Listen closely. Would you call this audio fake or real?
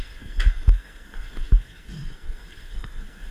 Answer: fake